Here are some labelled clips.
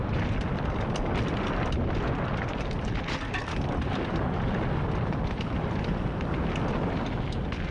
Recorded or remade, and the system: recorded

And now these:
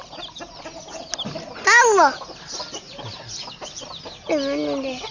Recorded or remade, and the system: recorded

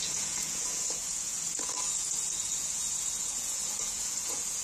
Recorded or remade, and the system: remade, vocoder, Vocos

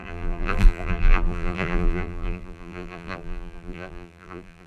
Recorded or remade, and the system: remade, vocoder, BigVGAN v2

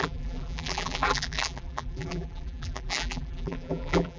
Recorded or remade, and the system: remade, vocoder, BigVGAN v2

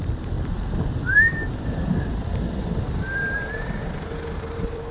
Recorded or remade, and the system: remade, vocoder, BigVGAN v2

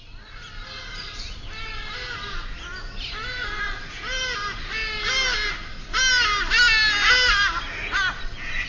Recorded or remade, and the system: recorded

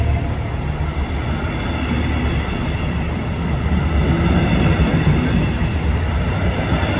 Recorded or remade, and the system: recorded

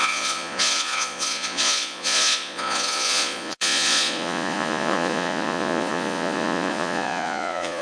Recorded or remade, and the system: remade, vocoder, Vocos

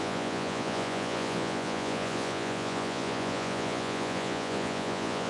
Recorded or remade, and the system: remade, vocoder, Vocos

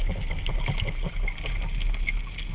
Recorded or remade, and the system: recorded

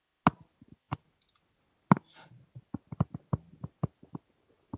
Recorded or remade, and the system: recorded